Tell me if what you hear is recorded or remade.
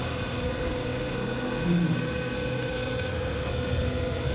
remade